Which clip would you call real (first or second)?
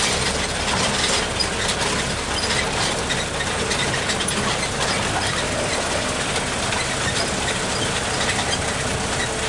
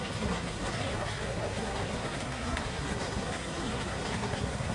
first